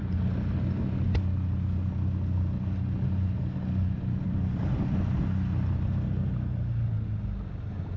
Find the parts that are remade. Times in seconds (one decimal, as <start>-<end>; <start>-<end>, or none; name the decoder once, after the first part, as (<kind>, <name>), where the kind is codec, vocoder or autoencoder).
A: none